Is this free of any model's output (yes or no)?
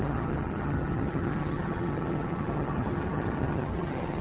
no